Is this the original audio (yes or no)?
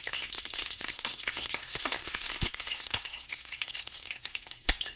no